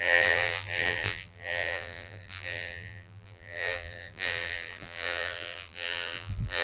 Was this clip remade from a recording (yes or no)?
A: yes